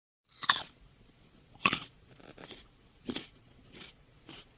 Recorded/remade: remade